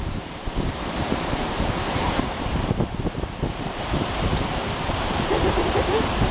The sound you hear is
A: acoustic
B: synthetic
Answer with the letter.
B